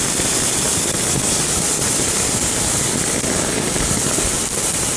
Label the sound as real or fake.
real